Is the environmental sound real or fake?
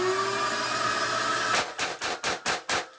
real